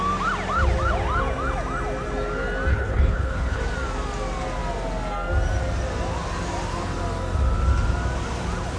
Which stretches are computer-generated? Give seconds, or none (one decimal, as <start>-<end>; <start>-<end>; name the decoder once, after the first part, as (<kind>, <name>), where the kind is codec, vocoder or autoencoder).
2.7-3.6 (codec, HILCodec)